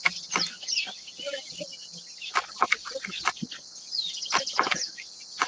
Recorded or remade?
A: recorded